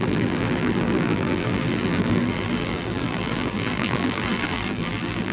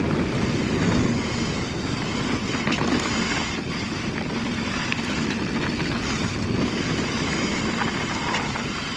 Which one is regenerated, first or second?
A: first